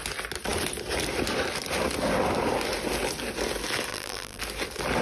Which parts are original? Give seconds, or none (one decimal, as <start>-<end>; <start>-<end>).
0.0-3.9; 4.4-5.0